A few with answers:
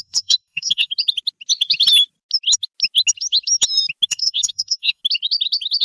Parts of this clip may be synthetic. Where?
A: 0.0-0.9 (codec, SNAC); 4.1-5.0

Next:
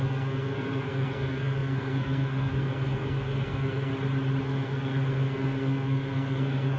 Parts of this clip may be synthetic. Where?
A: 0.0-3.9 (codec, SNAC); 4.4-6.8